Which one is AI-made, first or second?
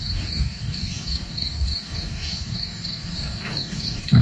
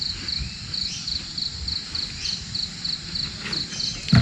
first